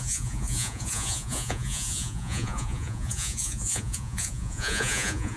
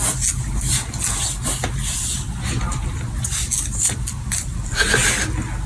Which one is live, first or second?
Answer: second